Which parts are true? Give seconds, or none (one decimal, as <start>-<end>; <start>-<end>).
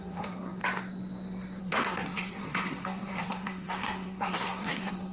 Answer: 0.6-1.6